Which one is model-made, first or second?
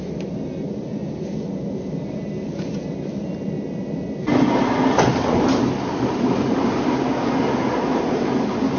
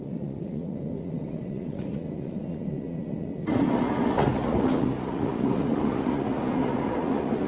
second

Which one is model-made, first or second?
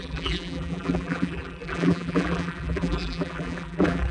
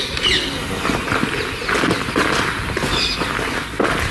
first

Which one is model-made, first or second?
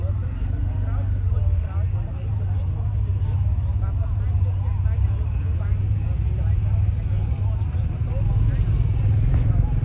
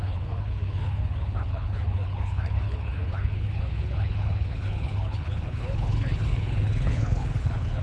second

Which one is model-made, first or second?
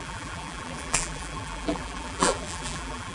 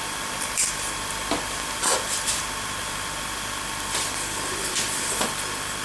first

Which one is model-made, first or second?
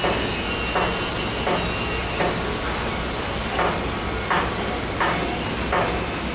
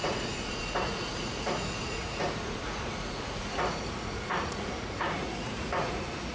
second